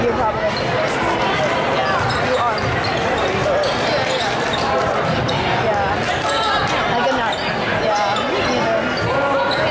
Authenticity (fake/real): real